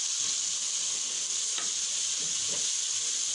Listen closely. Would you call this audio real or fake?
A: real